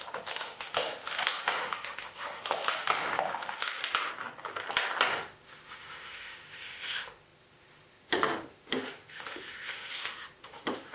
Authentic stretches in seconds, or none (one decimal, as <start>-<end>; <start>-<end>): 3.8-5.1